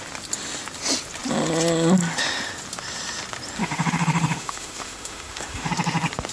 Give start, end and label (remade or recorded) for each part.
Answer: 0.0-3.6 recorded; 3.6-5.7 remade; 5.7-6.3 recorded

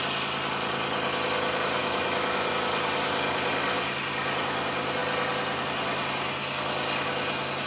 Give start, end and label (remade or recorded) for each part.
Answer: 0.0-1.8 recorded; 1.8-2.5 remade; 2.5-7.7 recorded

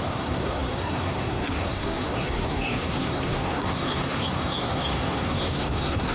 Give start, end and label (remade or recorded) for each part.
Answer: 0.0-6.1 remade